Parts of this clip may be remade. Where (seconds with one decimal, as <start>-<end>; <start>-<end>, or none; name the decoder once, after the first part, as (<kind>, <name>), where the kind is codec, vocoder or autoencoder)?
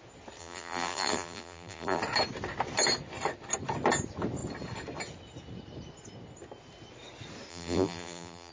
0.4-2.0 (vocoder, BigVGAN v2); 7.5-8.5